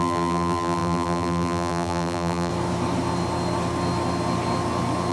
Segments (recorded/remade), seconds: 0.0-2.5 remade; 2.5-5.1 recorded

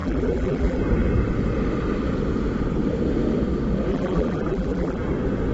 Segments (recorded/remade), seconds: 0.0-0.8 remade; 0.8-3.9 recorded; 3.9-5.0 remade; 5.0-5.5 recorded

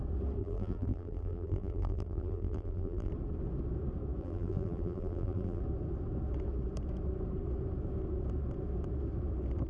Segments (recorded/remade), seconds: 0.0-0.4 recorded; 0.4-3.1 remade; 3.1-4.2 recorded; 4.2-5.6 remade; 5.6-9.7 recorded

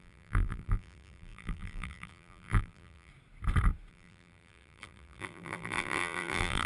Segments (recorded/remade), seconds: 0.0-3.1 remade; 3.1-3.9 recorded; 3.9-6.7 remade